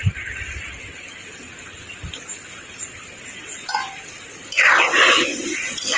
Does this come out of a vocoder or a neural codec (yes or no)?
no